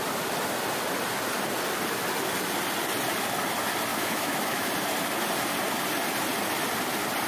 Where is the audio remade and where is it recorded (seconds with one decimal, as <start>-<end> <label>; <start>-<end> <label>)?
0.0-3.9 recorded; 3.9-4.7 remade; 4.7-7.3 recorded